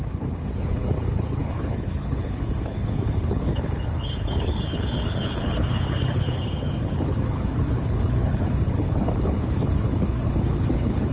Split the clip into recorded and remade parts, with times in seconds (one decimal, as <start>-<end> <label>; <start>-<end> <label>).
0.0-11.1 remade